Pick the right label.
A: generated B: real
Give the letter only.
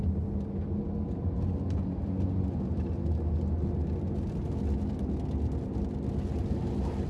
B